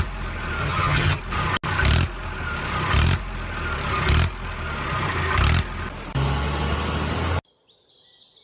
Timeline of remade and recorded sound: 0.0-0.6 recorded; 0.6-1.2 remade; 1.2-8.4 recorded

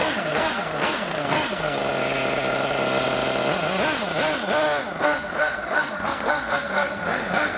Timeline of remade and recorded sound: 0.0-1.8 remade; 1.8-5.0 recorded; 5.0-7.6 remade

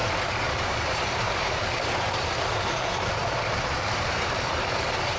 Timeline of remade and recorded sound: 0.0-5.2 remade

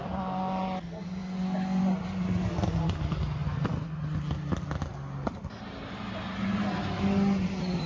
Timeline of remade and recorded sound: 0.0-7.9 recorded